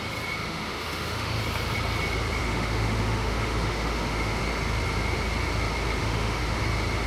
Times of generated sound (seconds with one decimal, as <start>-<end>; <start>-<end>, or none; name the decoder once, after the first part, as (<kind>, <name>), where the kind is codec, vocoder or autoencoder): 0.4-1.4 (autoencoder, DAC-VAE); 2.4-4.4; 6.0-6.6